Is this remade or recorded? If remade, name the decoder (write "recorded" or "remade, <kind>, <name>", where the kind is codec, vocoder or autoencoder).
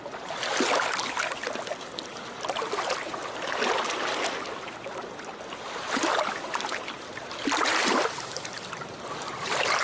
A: recorded